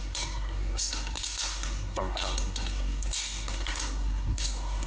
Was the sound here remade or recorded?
remade